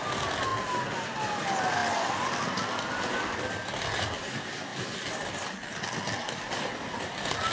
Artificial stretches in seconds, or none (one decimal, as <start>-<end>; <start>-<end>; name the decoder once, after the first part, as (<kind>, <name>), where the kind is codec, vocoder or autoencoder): none